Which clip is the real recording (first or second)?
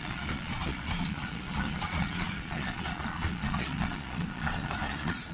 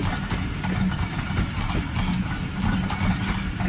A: second